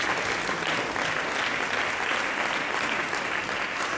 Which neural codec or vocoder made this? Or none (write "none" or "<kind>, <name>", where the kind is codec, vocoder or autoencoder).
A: none